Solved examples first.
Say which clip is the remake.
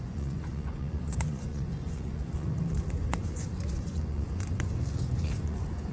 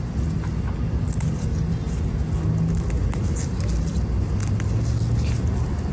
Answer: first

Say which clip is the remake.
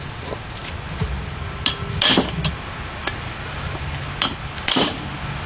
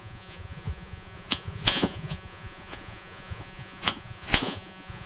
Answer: second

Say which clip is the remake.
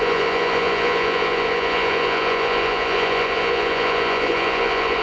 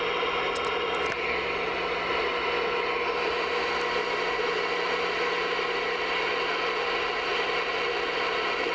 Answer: first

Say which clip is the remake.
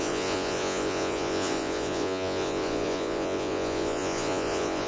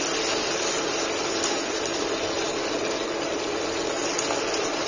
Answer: first